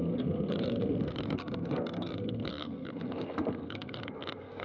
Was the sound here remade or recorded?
remade